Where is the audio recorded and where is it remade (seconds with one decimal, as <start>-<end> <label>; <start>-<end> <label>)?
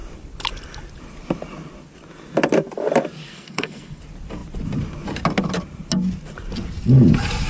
0.0-3.3 recorded; 3.3-4.0 remade; 4.0-7.5 recorded